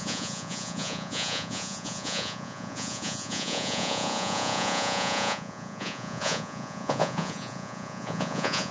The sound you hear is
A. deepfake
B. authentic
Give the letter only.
A